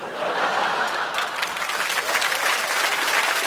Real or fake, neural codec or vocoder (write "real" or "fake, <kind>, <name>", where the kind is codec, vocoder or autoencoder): real